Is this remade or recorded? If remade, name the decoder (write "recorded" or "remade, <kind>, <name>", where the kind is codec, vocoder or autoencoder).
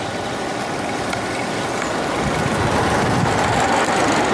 recorded